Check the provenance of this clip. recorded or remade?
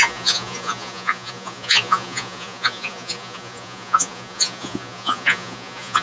remade